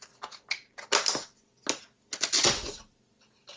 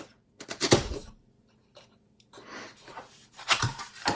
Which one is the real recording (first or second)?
first